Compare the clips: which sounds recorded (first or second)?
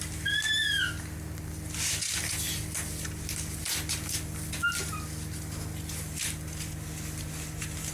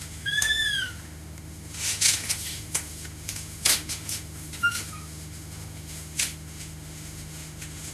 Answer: first